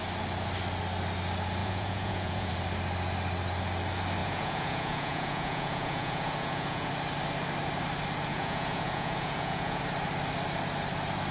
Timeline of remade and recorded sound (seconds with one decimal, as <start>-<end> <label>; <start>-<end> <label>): 0.0-1.6 recorded; 1.6-2.5 remade; 2.5-4.2 recorded; 4.2-6.9 remade; 6.9-8.3 recorded; 8.3-9.8 remade; 9.8-11.3 recorded